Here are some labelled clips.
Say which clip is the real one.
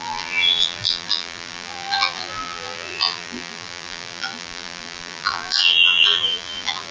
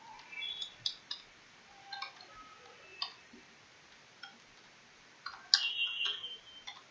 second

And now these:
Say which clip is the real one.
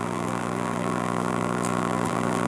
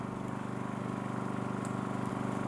second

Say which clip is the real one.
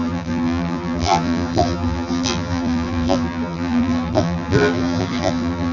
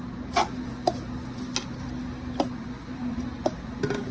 second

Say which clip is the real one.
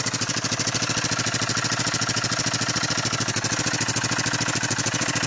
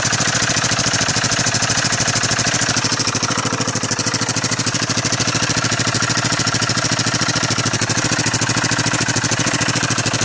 first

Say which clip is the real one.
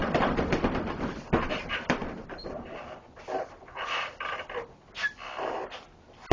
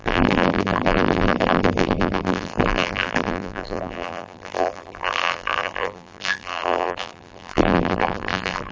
first